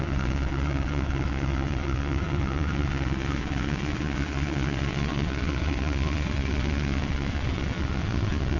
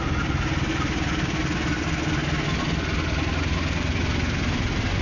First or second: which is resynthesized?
first